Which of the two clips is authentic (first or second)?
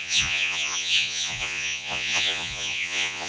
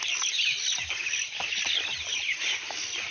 second